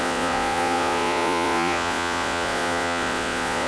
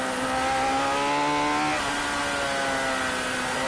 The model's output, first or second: first